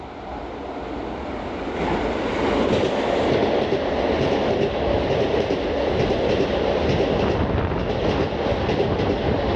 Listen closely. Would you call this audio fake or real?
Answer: real